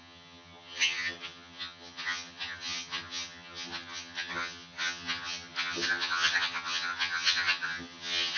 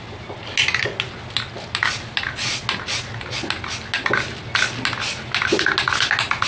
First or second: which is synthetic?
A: first